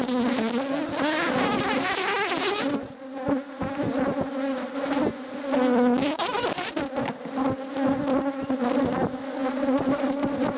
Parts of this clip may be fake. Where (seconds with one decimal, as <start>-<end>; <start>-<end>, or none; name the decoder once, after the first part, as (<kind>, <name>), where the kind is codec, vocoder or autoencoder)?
9.4-10.6 (vocoder, BigVGAN v2)